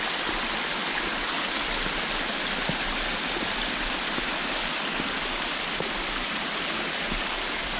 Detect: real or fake real